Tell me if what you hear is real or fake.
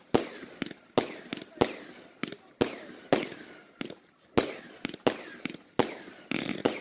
real